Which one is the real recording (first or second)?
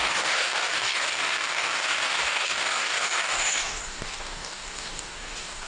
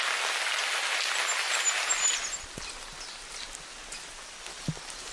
second